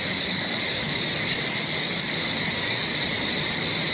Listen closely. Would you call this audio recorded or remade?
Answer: recorded